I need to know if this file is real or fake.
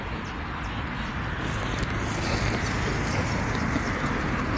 real